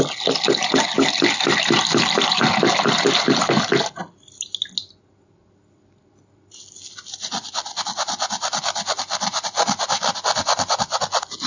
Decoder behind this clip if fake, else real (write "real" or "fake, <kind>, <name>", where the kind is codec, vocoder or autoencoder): real